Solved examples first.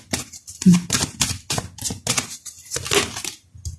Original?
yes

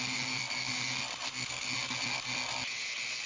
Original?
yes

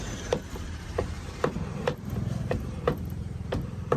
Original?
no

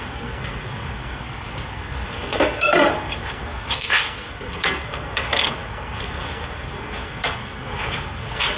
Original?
no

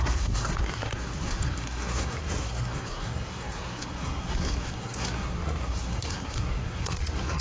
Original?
no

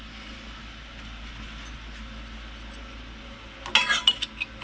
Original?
yes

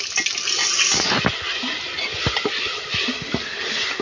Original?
yes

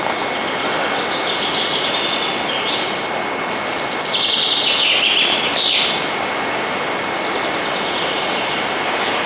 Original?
yes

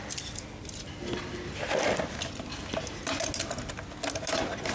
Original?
yes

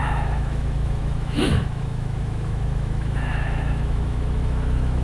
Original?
no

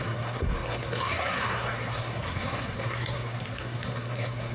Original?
no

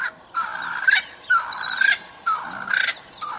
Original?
yes